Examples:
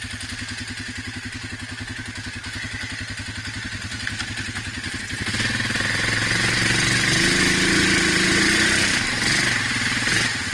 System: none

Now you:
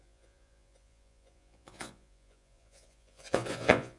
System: vocoder, Vocos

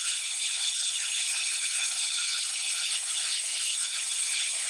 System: codec, HILCodec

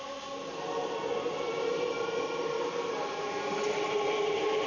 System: none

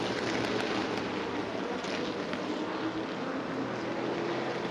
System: none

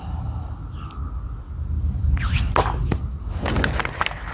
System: none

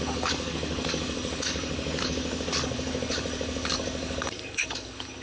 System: codec, DAC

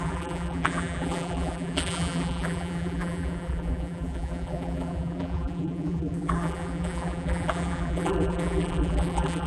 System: vocoder, BigVGAN v2